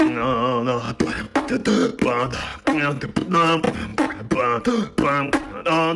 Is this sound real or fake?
real